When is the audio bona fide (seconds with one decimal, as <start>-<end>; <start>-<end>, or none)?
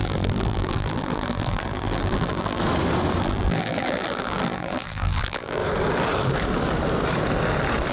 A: 2.6-3.2; 5.6-7.9